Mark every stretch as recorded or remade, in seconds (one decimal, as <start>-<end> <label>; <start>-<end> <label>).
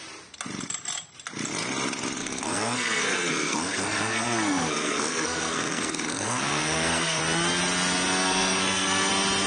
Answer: 0.0-2.2 recorded; 2.2-7.2 remade; 7.2-8.2 recorded; 8.2-9.1 remade; 9.1-9.5 recorded